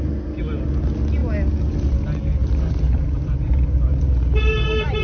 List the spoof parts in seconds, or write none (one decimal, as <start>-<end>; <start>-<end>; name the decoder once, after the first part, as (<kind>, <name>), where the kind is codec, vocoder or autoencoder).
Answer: 2.4-4.1 (vocoder, BigVGAN v2)